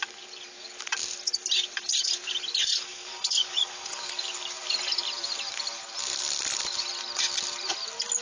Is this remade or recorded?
recorded